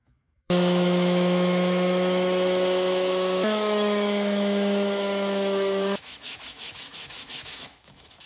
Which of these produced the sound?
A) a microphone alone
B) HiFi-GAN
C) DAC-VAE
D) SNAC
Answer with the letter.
C